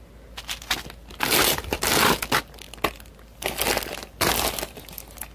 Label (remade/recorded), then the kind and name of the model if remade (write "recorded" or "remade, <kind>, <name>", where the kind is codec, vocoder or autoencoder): recorded